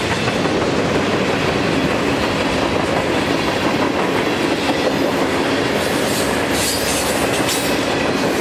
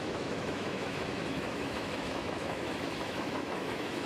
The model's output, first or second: second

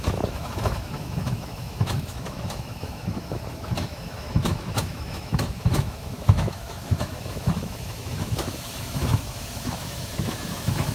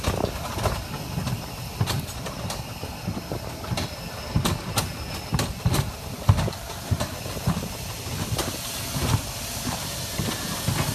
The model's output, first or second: first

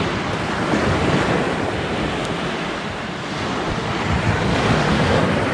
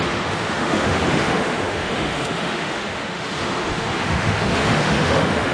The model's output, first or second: second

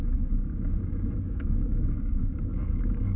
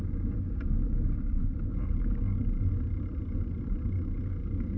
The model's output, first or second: first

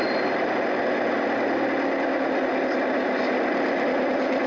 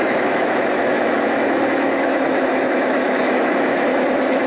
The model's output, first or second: second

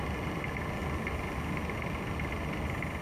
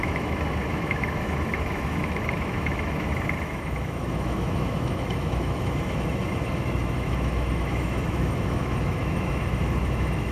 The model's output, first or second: second